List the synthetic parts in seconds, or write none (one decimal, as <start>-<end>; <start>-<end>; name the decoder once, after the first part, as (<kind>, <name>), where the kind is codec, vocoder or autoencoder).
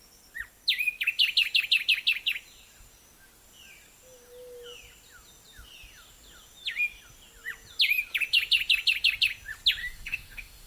9.8-10.7 (autoencoder, DAC-VAE)